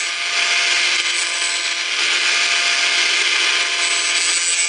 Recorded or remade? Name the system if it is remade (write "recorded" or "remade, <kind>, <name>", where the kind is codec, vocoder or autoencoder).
recorded